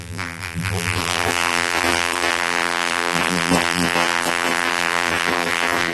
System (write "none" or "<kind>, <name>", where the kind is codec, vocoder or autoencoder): vocoder, BigVGAN v2